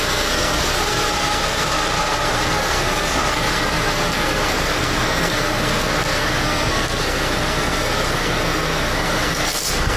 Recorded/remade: remade